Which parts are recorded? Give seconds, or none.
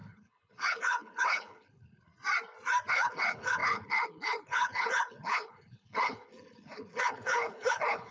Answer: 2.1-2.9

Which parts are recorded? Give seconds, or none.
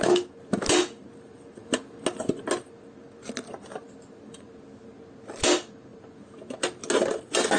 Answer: 0.0-7.6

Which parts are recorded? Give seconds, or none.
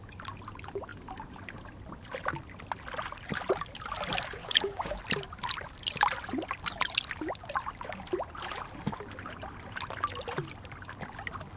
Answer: 0.0-4.4; 5.0-11.6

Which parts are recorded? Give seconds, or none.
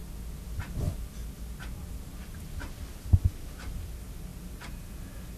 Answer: 0.0-5.4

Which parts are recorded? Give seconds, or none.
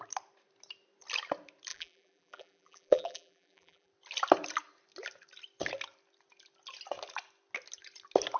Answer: 0.0-1.7; 3.9-8.4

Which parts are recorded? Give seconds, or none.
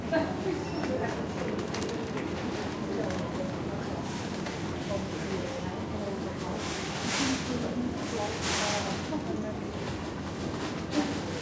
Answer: 0.0-11.4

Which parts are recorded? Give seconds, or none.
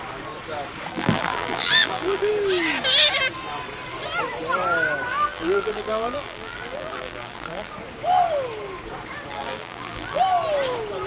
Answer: 0.0-0.9; 2.3-5.1; 7.7-9.3; 10.2-11.1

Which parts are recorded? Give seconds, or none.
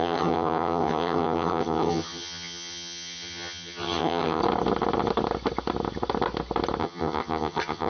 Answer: 4.4-6.8